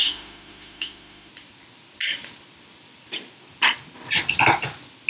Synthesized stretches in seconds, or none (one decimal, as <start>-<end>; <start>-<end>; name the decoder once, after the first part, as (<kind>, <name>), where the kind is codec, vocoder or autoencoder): 0.0-1.3 (autoencoder, DAC-VAE)